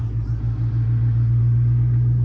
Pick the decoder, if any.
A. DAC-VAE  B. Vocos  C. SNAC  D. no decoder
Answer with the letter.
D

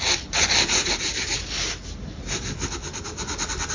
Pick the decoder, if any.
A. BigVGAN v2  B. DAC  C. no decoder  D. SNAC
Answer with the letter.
C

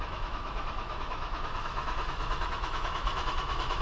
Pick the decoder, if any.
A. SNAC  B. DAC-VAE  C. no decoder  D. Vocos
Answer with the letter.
B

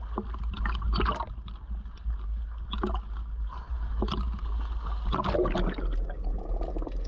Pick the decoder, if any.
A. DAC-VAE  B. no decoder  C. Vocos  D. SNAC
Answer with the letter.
B